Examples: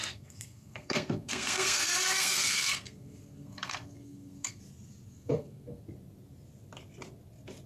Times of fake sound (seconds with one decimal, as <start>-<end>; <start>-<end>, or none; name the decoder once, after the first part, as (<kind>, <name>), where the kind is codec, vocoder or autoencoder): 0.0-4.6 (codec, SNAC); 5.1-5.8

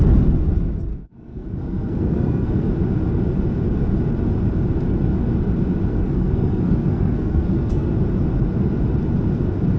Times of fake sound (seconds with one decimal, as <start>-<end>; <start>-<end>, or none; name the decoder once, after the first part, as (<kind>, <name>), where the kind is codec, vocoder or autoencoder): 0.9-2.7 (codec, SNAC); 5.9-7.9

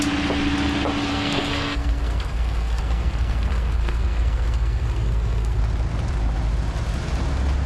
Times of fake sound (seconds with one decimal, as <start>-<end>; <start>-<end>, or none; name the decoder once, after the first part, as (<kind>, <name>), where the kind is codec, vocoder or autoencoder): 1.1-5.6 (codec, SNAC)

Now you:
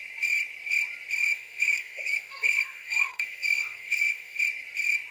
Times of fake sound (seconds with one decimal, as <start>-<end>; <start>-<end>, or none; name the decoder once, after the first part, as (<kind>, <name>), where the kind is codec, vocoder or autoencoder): 1.3-4.4 (codec, SNAC)

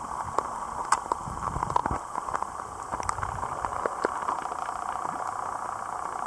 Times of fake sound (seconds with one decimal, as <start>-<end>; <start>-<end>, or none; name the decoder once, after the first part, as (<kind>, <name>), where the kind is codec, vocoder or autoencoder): none